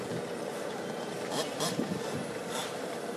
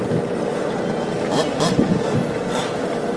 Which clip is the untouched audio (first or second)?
second